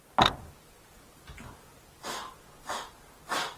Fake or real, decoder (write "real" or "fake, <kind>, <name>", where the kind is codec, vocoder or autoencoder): real